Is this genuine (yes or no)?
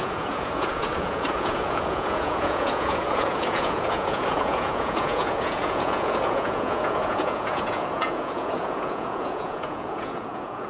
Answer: no